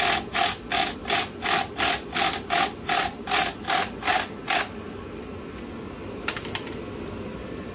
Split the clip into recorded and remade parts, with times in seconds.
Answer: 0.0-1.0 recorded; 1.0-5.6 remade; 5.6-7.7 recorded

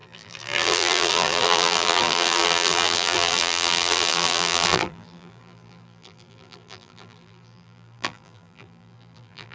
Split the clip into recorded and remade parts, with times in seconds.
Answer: 0.0-9.5 remade

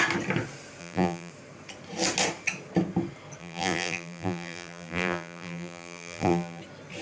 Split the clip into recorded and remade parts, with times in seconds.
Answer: 0.0-0.8 recorded; 0.8-1.3 remade; 1.3-3.4 recorded; 3.4-6.6 remade; 6.6-7.0 recorded

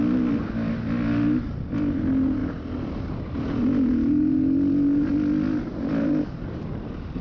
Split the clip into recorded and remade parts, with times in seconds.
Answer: 0.0-7.2 recorded

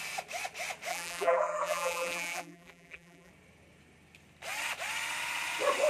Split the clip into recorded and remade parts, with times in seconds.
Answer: 0.0-0.9 recorded; 0.9-3.3 remade; 3.3-5.9 recorded

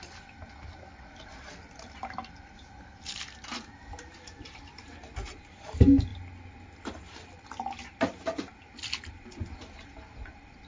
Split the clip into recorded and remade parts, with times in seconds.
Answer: 0.0-10.7 recorded

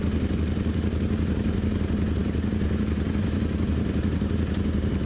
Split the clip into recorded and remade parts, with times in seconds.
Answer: 0.0-5.1 remade